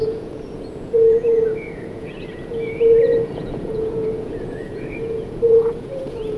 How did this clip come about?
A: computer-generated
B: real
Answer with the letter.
A